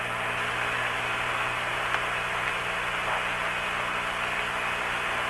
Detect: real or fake real